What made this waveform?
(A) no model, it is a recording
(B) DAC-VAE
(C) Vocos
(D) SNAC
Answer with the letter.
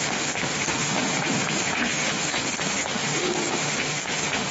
B